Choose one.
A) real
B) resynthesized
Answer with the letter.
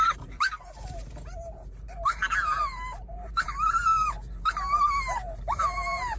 B